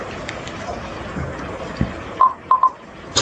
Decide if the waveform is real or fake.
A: real